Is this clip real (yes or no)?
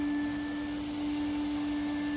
yes